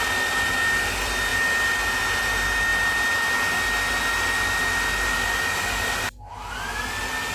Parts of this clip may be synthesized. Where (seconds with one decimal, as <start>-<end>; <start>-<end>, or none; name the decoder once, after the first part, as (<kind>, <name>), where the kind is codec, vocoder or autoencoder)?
none